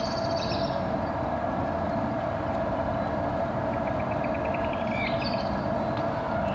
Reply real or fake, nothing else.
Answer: real